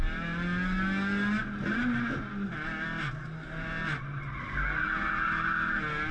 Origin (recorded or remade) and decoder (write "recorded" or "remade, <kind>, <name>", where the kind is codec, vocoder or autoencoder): recorded